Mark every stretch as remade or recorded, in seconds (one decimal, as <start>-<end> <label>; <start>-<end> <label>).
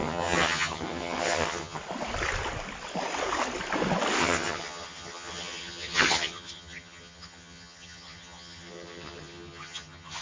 0.0-1.8 remade; 1.8-4.2 recorded; 4.2-10.2 remade